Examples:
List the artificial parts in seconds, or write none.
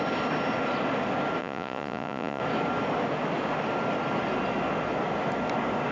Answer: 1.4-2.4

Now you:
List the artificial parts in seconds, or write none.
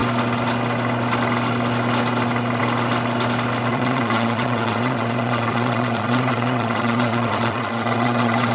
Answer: 3.7-8.5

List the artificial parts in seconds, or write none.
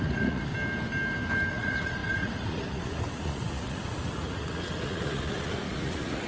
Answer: 0.0-0.5; 1.5-6.3